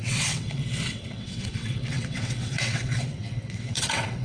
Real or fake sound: fake